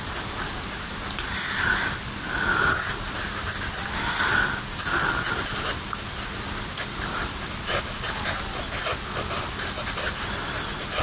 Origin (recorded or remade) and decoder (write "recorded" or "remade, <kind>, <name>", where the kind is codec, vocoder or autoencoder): recorded